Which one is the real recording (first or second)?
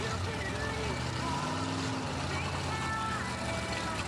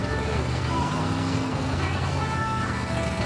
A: first